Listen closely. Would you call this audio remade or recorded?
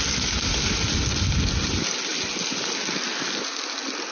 recorded